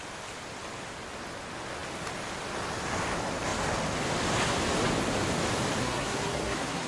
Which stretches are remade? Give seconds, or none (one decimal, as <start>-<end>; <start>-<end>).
5.8-6.9